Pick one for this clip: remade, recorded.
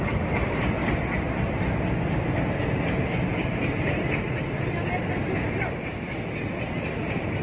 recorded